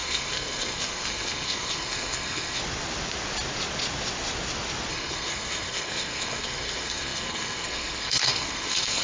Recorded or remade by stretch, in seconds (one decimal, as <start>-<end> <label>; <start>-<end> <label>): 0.0-2.6 remade; 2.6-4.9 recorded; 4.9-9.0 remade